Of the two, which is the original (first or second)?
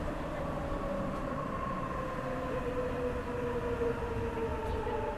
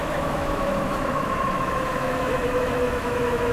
first